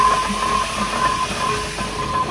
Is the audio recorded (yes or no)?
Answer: yes